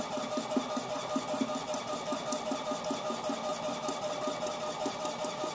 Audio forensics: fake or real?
real